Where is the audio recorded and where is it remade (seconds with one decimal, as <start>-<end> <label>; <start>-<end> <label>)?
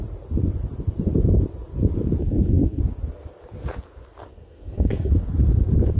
0.0-2.2 recorded; 2.2-2.8 remade; 2.8-4.3 recorded; 4.3-5.1 remade; 5.1-6.0 recorded